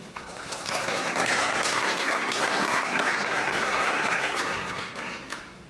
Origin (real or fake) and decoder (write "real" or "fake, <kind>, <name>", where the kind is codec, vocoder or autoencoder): fake, codec, SNAC